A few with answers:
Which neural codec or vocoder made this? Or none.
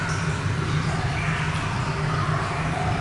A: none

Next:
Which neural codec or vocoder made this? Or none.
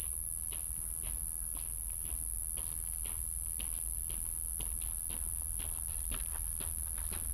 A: none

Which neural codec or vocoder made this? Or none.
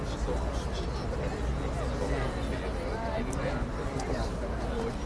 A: none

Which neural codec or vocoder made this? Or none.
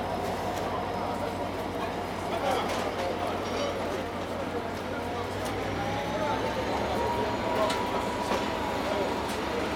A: none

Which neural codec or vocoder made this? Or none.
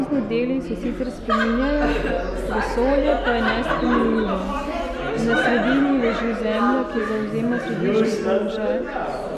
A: none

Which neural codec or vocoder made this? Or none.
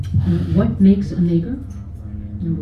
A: none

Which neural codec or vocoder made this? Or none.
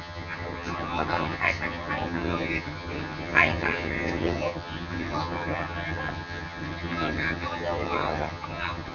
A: vocoder, HiFi-GAN